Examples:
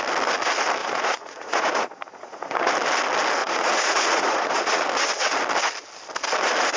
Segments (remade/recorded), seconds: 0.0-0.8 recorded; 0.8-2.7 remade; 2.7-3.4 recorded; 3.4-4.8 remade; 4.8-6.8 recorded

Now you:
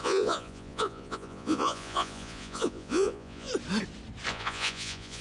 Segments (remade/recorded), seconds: 0.0-3.5 remade; 3.5-4.3 recorded; 4.3-5.2 remade

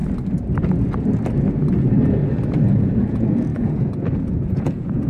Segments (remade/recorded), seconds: 0.0-2.8 recorded; 2.8-5.1 remade

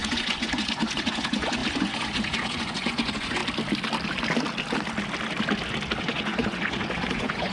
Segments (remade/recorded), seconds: 0.0-3.4 remade; 3.4-6.0 recorded; 6.0-7.5 remade

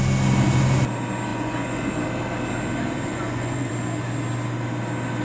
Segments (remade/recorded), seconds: 0.0-1.3 recorded; 1.3-1.9 remade; 1.9-3.1 recorded; 3.1-3.7 remade; 3.7-5.2 recorded